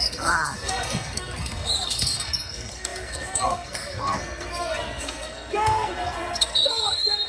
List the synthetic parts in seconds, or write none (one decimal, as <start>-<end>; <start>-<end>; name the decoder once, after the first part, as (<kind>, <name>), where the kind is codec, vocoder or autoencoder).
0.0-7.3 (codec, SNAC)